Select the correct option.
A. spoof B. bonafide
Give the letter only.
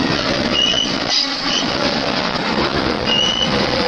A